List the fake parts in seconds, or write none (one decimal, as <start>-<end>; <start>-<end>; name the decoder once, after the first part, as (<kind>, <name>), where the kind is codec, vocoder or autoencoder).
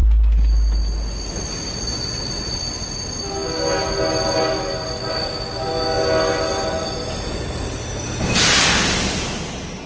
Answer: none